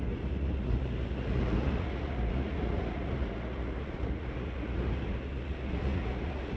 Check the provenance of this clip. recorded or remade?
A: remade